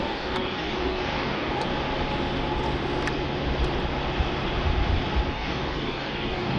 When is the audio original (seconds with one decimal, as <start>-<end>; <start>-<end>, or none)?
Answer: 1.7-5.3